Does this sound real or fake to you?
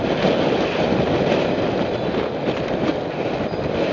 real